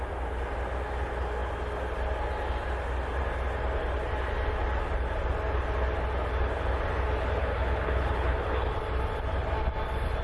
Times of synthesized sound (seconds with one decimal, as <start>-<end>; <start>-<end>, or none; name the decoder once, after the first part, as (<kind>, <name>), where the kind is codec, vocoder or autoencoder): 7.4-8.7 (codec, HILCodec)